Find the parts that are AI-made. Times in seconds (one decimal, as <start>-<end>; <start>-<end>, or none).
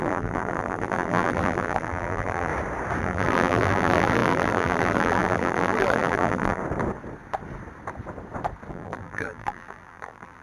0.0-2.5; 3.0-6.6; 8.7-10.4